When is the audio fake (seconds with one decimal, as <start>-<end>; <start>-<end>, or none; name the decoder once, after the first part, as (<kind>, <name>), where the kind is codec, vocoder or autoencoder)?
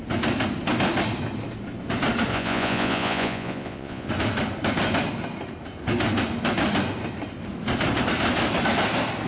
2.3-4.1 (vocoder, Vocos)